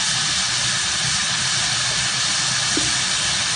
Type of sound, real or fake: real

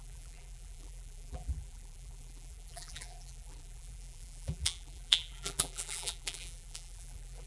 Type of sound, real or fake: fake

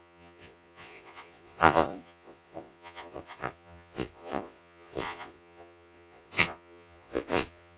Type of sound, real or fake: fake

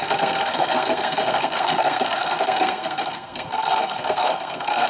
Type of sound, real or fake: fake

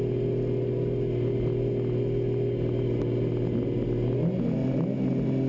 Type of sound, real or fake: real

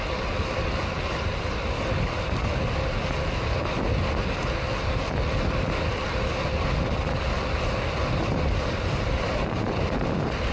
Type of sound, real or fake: real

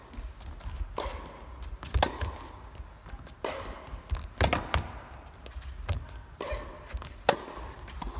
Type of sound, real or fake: real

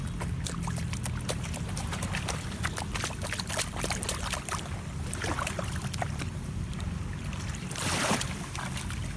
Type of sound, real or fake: real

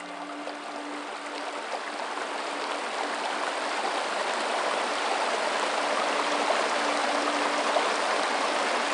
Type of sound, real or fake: real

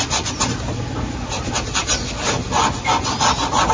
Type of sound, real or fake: real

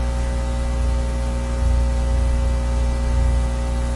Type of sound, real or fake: real